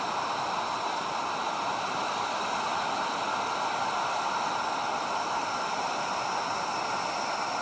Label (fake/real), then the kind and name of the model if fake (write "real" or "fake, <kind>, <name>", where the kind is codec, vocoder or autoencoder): real